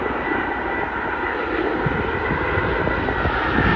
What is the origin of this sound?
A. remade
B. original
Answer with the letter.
B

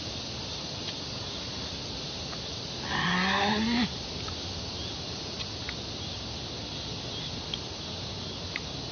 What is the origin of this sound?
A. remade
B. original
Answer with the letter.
B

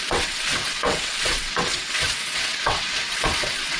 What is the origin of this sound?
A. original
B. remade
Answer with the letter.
B